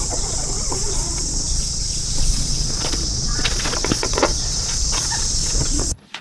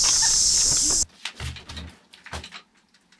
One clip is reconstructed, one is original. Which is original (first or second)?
second